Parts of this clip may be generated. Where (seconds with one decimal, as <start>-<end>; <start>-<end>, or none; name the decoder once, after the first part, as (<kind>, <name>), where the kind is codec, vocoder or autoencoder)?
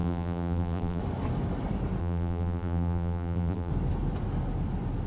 0.0-1.0 (vocoder, BigVGAN v2); 2.0-3.7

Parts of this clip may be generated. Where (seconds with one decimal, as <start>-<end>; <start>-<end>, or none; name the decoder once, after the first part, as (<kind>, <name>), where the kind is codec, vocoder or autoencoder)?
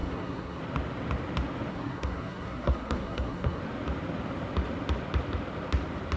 0.0-0.6 (codec, SNAC); 1.7-3.6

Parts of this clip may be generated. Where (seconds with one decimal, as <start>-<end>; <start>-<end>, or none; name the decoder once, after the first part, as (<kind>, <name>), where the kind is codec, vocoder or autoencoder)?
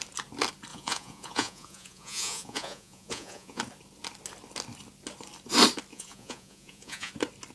0.7-3.6 (vocoder, Vocos); 5.9-7.1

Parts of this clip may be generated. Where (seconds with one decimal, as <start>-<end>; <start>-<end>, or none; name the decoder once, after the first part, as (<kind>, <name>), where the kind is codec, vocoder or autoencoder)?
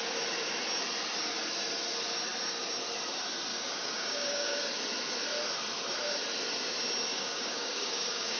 3.5-4.7 (codec, DAC); 7.1-8.4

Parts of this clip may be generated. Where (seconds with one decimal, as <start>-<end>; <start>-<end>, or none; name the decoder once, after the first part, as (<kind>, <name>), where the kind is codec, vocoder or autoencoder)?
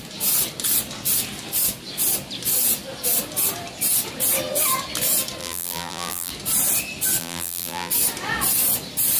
5.4-6.3 (vocoder, BigVGAN v2); 7.2-7.9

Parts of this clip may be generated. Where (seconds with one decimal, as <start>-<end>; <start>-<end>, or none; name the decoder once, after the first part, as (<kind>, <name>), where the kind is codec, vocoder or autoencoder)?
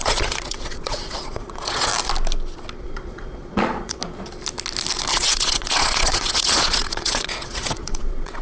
0.0-1.9 (vocoder, Vocos); 2.8-4.0; 5.1-8.4